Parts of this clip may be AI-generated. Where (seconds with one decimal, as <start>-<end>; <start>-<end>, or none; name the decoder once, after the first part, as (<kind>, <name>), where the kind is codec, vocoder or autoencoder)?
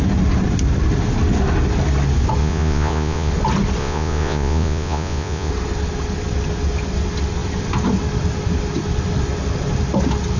2.4-3.3 (vocoder, Vocos); 3.8-5.5